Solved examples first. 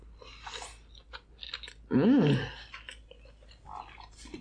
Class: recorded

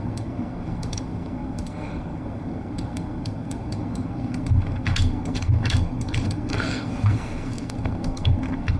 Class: remade